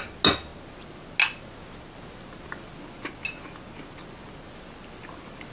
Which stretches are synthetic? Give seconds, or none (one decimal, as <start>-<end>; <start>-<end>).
none